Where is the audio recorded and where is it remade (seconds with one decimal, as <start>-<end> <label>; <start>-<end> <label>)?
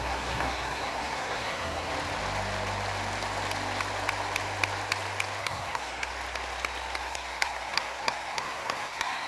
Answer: 0.0-1.9 remade; 1.9-5.4 recorded; 5.4-6.1 remade; 6.1-7.0 recorded; 7.0-9.3 remade